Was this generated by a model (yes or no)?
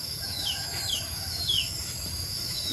yes